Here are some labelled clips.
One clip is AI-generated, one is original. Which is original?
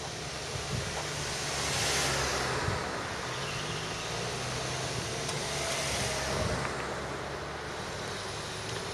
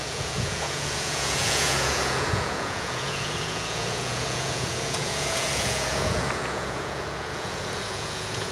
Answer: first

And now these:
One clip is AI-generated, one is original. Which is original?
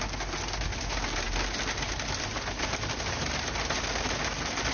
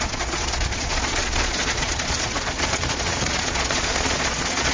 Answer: first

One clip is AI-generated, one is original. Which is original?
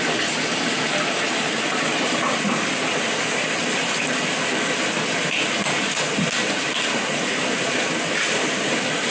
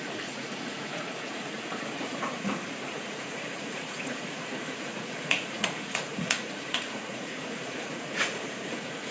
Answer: first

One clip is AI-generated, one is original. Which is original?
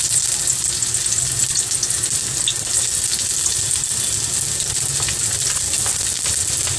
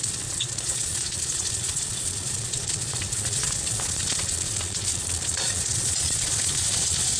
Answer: first